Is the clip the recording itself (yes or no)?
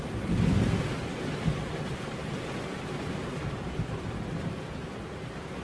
yes